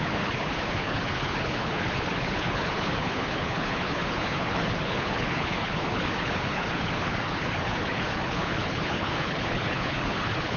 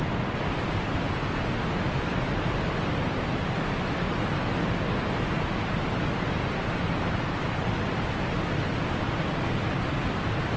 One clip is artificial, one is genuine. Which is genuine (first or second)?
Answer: second